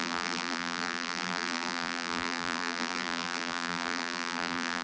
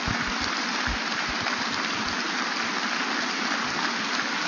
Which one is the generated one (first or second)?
first